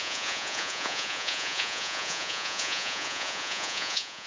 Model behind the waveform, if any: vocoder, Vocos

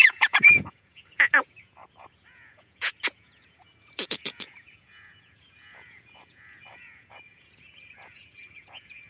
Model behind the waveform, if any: vocoder, Vocos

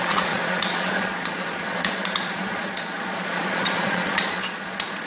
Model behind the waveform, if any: vocoder, Vocos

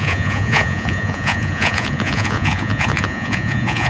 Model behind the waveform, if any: vocoder, Vocos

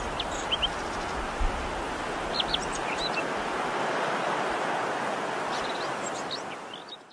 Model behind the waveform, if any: none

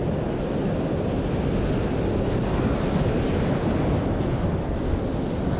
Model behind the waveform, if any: none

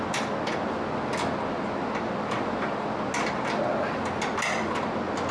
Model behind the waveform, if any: none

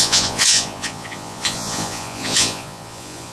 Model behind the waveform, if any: vocoder, Vocos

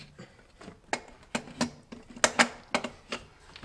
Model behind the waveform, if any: none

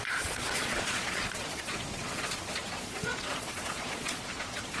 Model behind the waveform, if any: vocoder, Vocos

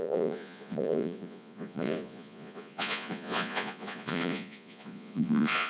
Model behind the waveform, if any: vocoder, Vocos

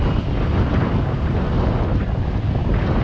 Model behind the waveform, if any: none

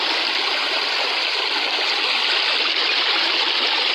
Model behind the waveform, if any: none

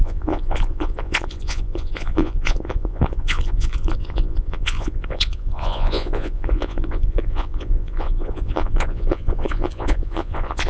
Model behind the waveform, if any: vocoder, Vocos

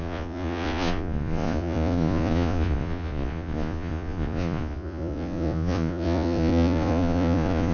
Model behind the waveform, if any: vocoder, Vocos